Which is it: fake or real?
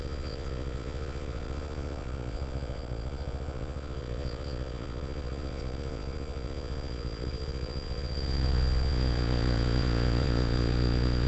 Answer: fake